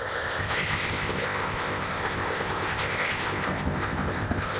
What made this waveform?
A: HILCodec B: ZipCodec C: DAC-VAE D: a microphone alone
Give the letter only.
B